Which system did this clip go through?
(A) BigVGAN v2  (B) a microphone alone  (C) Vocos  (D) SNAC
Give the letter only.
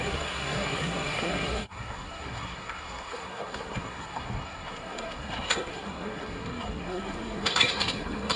D